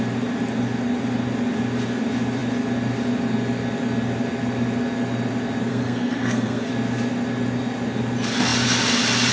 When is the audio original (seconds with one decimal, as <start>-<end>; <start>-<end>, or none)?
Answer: 0.0-5.7; 6.7-9.3